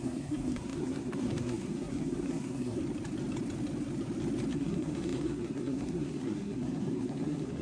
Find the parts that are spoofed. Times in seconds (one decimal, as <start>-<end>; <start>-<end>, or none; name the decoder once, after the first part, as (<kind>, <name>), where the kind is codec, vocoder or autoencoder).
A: 0.0-2.8 (codec, SNAC); 4.5-7.6